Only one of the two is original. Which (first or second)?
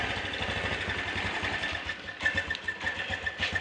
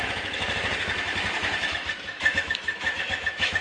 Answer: first